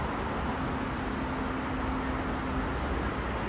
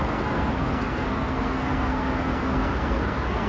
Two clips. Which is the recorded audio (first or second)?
first